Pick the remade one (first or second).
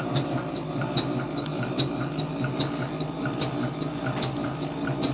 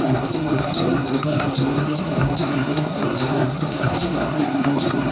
second